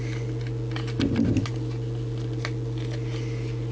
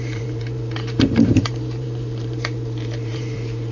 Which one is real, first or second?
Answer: first